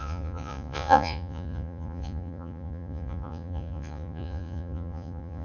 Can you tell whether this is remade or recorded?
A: remade